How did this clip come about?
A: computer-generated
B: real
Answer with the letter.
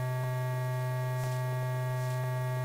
B